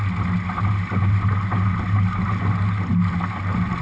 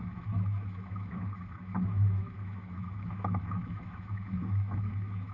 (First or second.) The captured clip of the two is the first